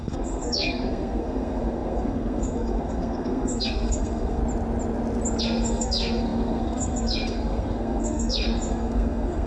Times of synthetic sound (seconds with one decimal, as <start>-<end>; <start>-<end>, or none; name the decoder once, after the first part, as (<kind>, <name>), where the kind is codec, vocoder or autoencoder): 0.0-4.4 (codec, SNAC); 5.4-9.5